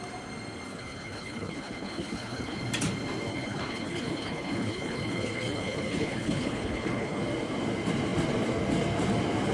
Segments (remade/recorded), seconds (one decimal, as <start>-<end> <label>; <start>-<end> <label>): 0.0-0.7 recorded; 0.7-2.6 remade; 2.6-3.3 recorded; 3.3-7.2 remade; 7.2-9.5 recorded